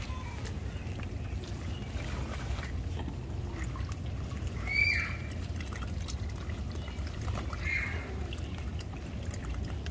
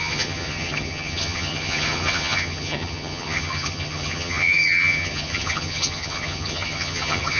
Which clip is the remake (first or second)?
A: second